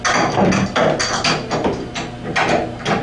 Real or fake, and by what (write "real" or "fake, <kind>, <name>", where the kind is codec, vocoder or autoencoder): real